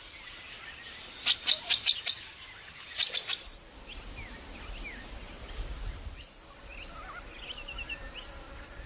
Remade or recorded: recorded